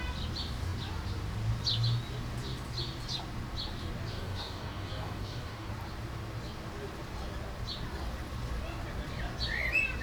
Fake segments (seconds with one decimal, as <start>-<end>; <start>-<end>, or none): 4.1-5.7